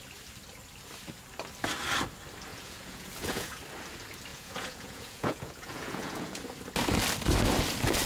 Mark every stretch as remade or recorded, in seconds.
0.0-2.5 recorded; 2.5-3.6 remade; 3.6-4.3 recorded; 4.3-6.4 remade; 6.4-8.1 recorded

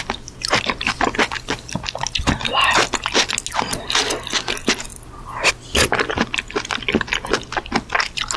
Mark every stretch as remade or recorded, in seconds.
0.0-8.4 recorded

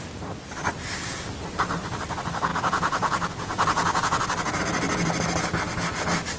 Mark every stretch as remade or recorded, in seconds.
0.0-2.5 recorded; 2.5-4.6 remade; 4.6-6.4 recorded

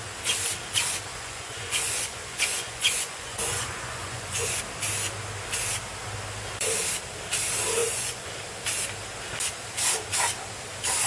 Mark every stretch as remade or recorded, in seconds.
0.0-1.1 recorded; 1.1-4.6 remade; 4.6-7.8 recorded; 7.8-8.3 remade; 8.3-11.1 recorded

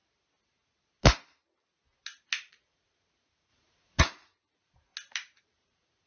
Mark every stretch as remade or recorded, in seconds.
0.0-2.5 recorded; 2.5-4.9 remade; 4.9-5.5 recorded; 5.5-6.1 remade

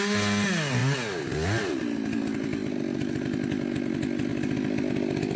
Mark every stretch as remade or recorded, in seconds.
0.0-5.4 recorded

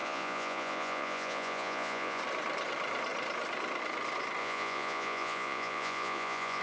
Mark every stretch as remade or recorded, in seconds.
0.0-2.2 remade; 2.2-4.4 recorded; 4.4-6.6 remade

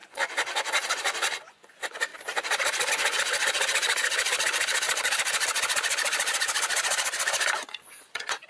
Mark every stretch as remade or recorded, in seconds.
0.0-2.1 remade; 2.1-2.9 recorded; 2.9-3.4 remade; 3.4-7.3 recorded; 7.3-8.5 remade